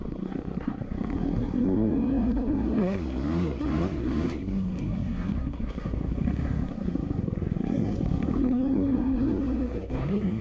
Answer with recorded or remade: remade